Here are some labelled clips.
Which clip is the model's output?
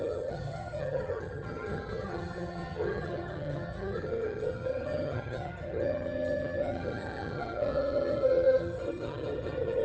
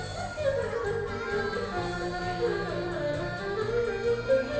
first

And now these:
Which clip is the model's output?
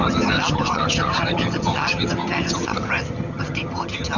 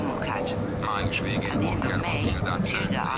first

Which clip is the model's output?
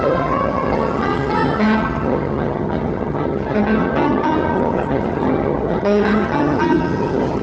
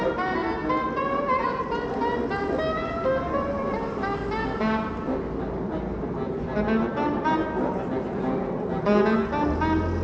first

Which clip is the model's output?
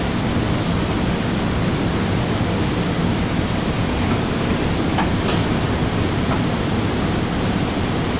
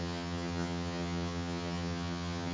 second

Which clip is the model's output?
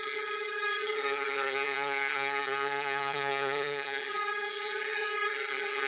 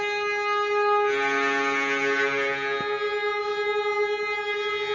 first